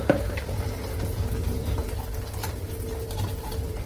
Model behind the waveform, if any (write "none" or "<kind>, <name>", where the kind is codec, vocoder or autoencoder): vocoder, BigVGAN v2